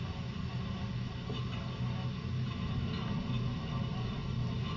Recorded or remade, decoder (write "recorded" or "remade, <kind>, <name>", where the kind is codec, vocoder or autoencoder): recorded